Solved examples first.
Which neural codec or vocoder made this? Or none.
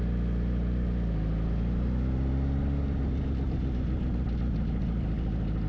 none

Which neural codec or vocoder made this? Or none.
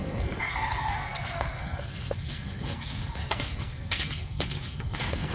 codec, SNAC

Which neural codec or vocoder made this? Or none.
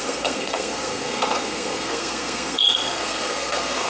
codec, SNAC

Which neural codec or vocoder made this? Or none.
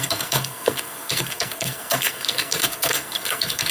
codec, SNAC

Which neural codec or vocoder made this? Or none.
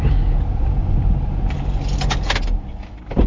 none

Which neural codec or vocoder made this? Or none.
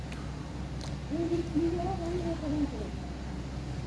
none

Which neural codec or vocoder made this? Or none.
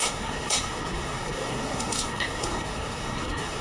codec, SNAC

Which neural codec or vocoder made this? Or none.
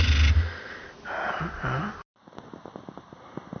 none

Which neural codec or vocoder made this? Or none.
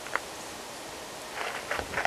none